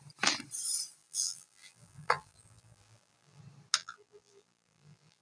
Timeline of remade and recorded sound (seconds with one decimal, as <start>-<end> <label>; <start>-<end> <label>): 0.0-1.0 recorded; 1.0-3.4 remade; 3.4-3.8 recorded; 3.8-5.2 remade